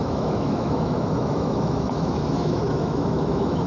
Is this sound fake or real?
fake